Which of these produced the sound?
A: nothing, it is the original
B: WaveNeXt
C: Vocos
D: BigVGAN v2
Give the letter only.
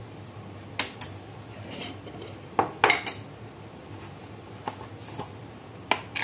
A